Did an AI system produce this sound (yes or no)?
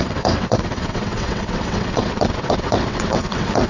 yes